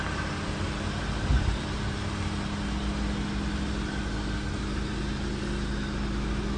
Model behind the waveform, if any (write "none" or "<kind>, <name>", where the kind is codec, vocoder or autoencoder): none